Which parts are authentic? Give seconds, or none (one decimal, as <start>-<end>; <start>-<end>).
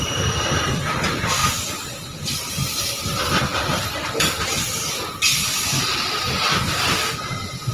0.0-7.7